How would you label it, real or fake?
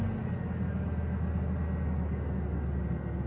real